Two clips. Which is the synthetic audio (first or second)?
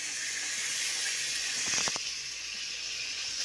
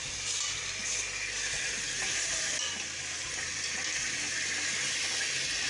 first